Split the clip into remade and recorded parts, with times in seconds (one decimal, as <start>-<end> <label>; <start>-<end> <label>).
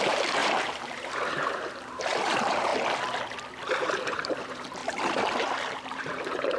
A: 0.0-2.7 remade; 2.7-3.8 recorded; 3.8-4.8 remade; 4.8-5.9 recorded; 5.9-6.6 remade